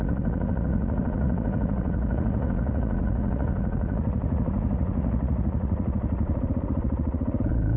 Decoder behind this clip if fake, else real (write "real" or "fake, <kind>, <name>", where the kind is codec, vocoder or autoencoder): fake, vocoder, Vocos